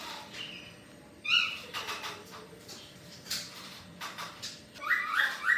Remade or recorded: remade